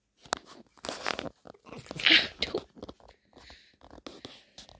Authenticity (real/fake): real